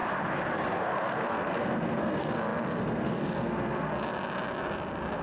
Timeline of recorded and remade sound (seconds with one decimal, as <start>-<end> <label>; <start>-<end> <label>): 0.0-0.8 recorded; 0.8-3.9 remade; 3.9-5.2 recorded